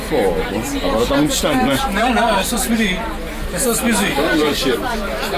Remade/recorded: remade